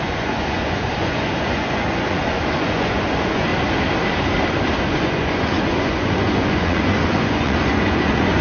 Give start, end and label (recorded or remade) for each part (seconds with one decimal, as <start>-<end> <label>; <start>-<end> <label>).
0.0-3.5 remade; 3.5-4.9 recorded; 4.9-8.4 remade